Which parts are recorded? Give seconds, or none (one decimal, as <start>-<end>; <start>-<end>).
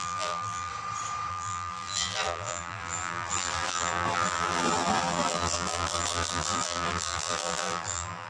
0.7-1.3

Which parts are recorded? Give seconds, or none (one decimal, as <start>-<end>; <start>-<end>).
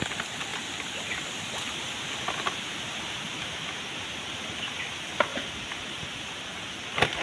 0.0-7.2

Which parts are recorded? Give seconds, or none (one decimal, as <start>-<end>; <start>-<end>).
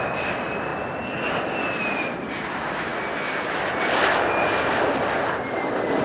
0.7-1.8; 2.9-3.5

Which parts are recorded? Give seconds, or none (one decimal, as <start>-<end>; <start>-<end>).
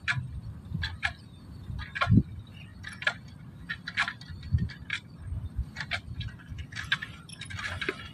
0.0-2.7; 3.8-8.1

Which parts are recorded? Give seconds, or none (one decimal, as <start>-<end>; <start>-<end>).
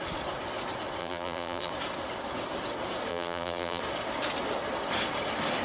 0.0-1.0; 1.7-3.1; 3.8-5.6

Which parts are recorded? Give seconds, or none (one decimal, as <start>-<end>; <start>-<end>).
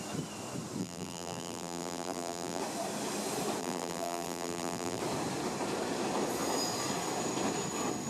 0.0-0.8; 2.6-3.6; 5.0-8.1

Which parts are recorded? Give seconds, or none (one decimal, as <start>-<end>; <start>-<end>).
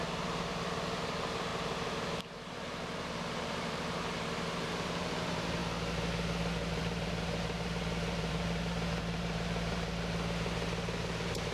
5.6-6.8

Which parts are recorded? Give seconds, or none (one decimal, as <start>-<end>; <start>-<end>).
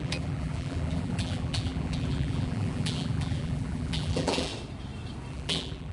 4.5-5.3